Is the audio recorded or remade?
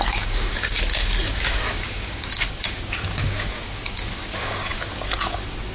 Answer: remade